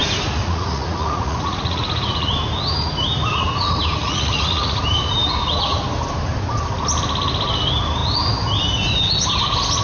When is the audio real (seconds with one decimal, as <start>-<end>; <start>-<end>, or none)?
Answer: 0.0-0.4; 2.3-4.0; 4.8-9.8